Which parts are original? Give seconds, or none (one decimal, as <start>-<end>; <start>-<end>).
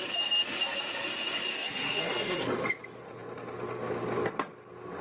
0.0-1.5; 2.4-5.0